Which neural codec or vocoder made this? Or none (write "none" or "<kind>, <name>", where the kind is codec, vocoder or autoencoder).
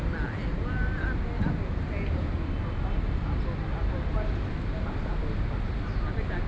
none